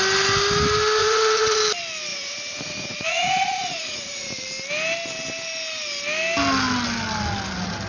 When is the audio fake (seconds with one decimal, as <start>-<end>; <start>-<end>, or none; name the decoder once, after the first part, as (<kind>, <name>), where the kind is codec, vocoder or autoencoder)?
1.0-1.6 (vocoder, Vocos); 2.1-4.4